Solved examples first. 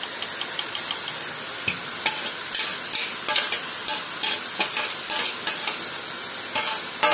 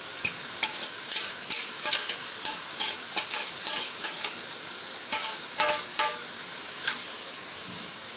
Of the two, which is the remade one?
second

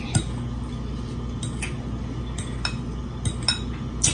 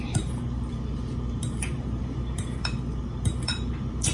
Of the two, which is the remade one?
second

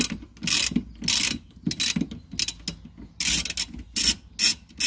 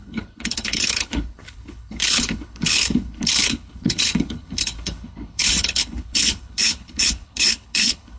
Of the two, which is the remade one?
second